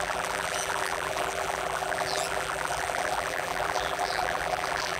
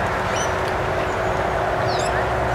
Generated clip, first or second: first